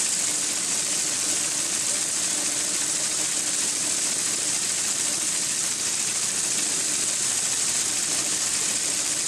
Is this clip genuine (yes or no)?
yes